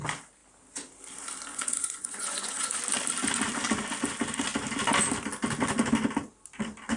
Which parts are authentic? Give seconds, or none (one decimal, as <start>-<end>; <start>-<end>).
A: 0.0-1.5; 2.8-7.0